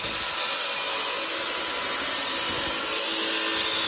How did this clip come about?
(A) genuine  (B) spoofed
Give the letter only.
A